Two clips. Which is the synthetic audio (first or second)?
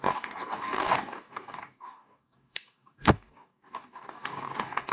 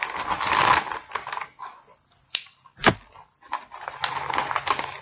first